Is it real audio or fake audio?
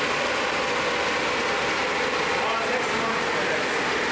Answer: real